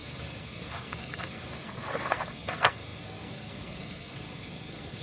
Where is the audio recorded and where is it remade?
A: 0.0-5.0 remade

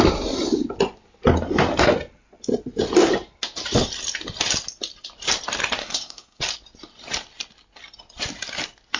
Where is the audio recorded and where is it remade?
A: 0.0-5.8 recorded; 5.8-6.4 remade; 6.4-9.0 recorded

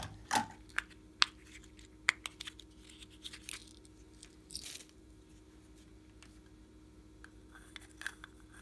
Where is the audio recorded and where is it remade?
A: 0.0-8.6 recorded

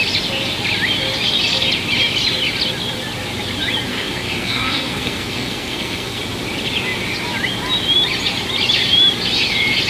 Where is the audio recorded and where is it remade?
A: 0.0-3.9 recorded; 3.9-6.2 remade; 6.2-9.9 recorded

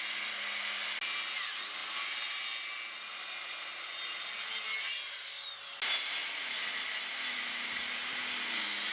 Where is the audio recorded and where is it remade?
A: 0.0-8.9 recorded

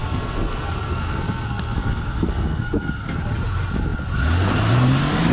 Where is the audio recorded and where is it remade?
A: 0.0-3.2 remade; 3.2-5.3 recorded